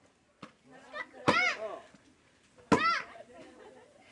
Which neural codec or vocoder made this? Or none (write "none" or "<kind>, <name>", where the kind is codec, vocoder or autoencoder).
none